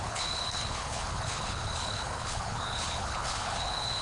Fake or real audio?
fake